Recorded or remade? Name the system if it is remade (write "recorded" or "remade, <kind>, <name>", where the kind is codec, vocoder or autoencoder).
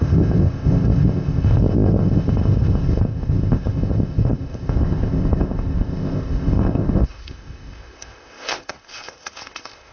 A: remade, codec, ZipCodec